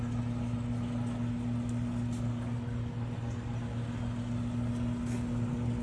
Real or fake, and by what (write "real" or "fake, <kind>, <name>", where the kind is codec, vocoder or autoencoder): real